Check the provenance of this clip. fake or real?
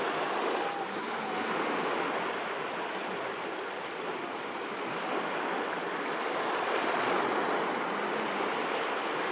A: real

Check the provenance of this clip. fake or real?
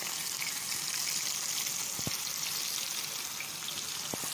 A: real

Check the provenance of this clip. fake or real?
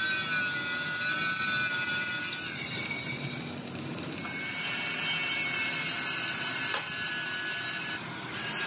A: real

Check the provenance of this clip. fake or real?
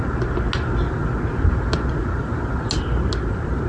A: real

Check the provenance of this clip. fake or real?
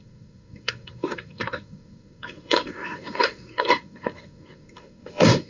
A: fake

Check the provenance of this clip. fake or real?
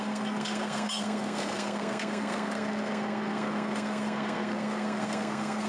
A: fake